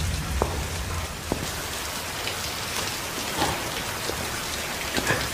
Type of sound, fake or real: real